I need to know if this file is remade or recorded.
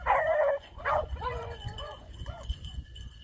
remade